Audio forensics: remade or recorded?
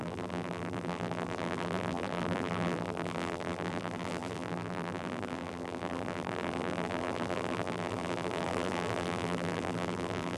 remade